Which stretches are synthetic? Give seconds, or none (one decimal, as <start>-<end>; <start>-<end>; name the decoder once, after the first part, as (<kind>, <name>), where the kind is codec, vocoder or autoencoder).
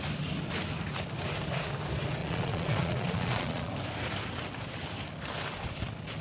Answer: 2.2-3.7 (vocoder, Vocos)